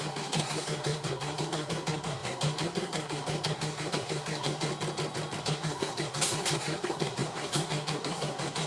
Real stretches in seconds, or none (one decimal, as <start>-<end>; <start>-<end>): 4.7-5.4